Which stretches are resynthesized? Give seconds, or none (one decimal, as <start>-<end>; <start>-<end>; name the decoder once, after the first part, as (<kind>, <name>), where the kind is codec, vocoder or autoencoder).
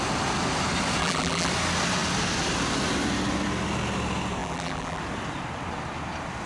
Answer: 1.0-1.5 (vocoder, BigVGAN v2); 4.4-5.0